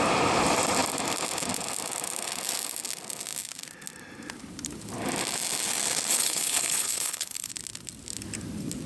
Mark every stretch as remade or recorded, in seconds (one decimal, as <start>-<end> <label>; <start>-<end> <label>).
0.0-6.1 recorded; 6.1-7.5 remade; 7.5-8.9 recorded